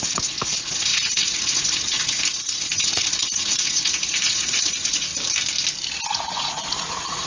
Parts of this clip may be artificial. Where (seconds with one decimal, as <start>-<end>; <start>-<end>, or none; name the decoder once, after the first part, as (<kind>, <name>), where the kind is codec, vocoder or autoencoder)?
0.0-5.1 (vocoder, Vocos); 6.1-7.3